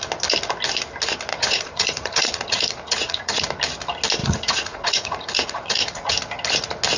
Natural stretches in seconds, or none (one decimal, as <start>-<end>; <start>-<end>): 0.0-1.3; 3.4-4.2; 6.1-7.0

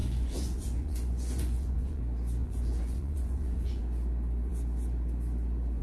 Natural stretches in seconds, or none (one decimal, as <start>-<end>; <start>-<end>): 2.0-2.4; 3.8-5.8

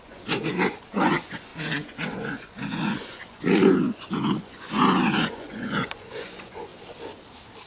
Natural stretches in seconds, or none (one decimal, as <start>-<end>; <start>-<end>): 6.7-7.7

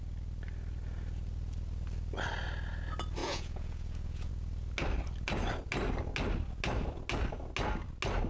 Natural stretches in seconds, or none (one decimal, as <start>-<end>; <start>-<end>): 0.0-3.2; 4.3-8.3

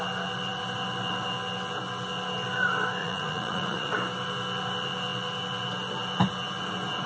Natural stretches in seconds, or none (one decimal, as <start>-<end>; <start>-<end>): 0.0-3.0; 3.9-7.1

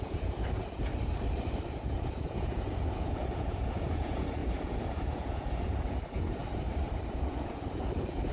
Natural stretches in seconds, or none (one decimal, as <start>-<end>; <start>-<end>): 0.9-1.7; 6.4-7.1

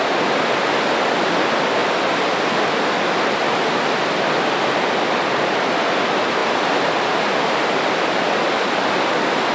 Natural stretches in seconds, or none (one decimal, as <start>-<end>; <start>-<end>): 0.0-9.5